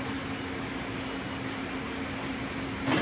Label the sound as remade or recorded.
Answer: recorded